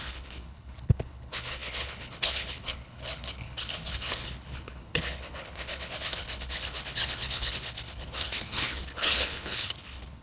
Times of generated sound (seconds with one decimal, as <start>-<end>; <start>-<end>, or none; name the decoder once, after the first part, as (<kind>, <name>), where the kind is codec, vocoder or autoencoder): 0.0-10.2 (codec, HILCodec)